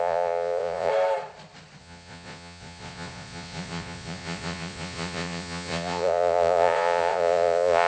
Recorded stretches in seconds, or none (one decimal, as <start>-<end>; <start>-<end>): 0.9-1.8

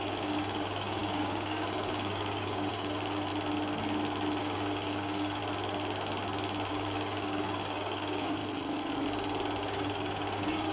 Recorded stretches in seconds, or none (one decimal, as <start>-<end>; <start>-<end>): 3.3-4.4; 5.4-6.7; 8.4-9.6

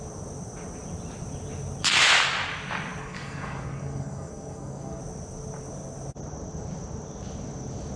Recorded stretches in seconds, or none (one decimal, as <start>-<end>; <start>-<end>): 0.0-3.0; 5.0-8.0

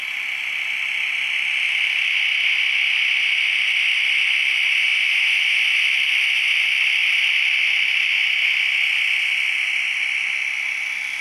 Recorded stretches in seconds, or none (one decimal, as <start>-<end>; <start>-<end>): 0.0-4.8; 5.6-11.2

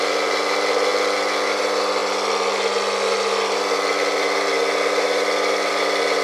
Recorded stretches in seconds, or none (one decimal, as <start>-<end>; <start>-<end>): 0.0-6.2

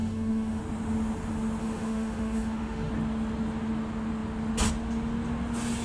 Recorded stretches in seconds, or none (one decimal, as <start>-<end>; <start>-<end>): 0.6-1.6; 2.9-5.8

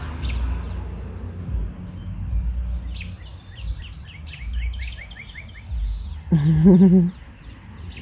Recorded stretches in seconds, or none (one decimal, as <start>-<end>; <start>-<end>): 0.0-8.0